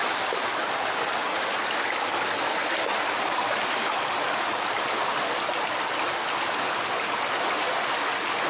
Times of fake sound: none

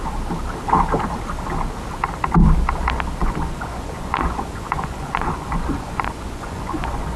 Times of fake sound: 3.2-7.2

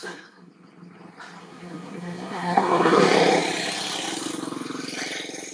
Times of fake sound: 0.0-0.5; 1.4-3.0

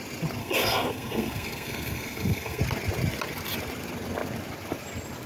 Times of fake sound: 0.4-2.6